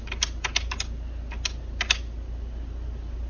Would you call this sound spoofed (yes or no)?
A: no